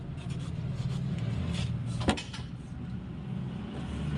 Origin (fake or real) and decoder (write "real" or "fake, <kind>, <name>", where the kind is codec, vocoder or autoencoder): real